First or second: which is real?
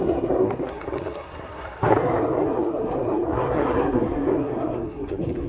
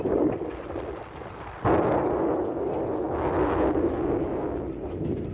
second